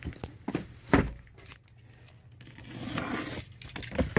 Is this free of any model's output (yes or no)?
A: yes